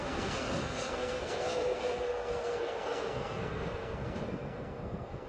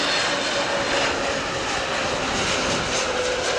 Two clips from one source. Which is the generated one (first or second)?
first